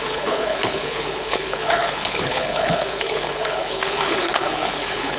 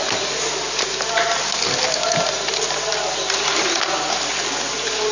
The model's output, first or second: first